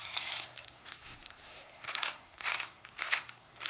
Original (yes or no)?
no